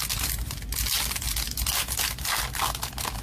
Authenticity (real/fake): real